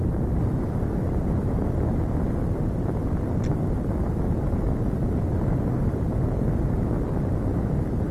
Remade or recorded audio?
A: recorded